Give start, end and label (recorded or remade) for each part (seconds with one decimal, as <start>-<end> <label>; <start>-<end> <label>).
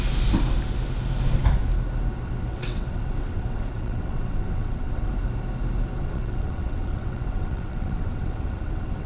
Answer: 0.0-2.5 recorded; 2.5-5.1 remade; 5.1-6.0 recorded; 6.0-9.1 remade